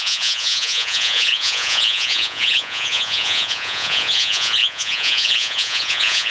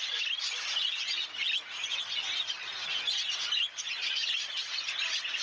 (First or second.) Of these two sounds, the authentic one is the second